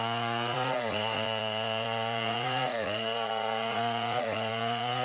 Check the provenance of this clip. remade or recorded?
remade